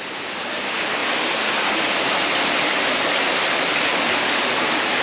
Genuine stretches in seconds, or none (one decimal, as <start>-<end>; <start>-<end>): 0.0-5.0